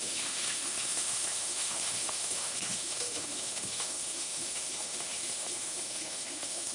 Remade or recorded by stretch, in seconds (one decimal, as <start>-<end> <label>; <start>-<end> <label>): 0.0-6.7 remade